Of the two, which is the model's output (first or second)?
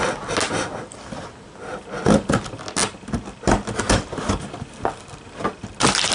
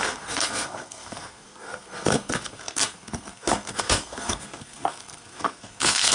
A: second